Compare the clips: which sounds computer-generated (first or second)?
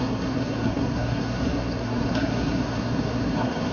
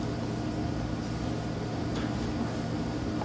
first